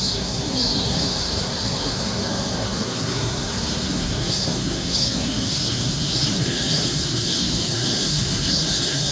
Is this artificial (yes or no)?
yes